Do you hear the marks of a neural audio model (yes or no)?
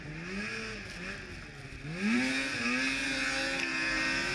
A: no